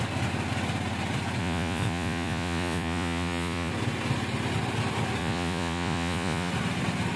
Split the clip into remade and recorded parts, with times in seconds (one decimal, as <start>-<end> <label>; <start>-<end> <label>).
0.0-1.4 recorded; 1.4-3.7 remade; 3.7-5.2 recorded; 5.2-6.5 remade; 6.5-7.2 recorded